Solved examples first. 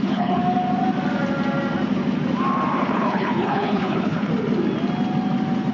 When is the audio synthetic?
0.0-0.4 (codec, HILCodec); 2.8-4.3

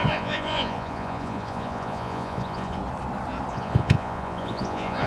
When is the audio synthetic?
0.0-2.8 (vocoder, Vocos); 3.5-5.1

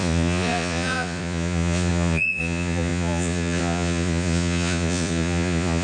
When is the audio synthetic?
0.0-5.8 (vocoder, Vocos)

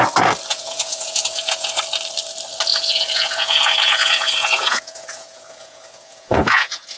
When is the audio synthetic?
0.5-1.8 (vocoder, Vocos); 2.7-7.0

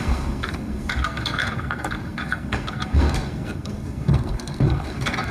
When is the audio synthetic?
0.0-5.3 (codec, SNAC)

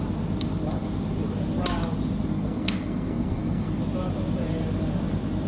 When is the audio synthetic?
2.3-3.8 (codec, SNAC)

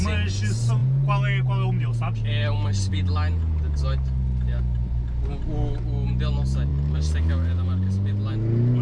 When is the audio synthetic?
none